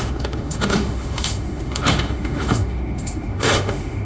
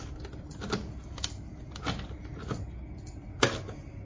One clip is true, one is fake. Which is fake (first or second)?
first